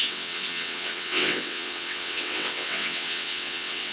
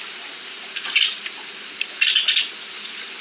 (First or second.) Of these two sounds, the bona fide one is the second